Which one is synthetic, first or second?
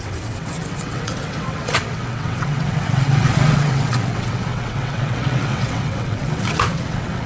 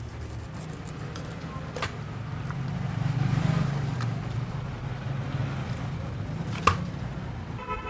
first